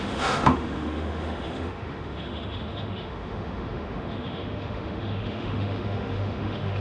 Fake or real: fake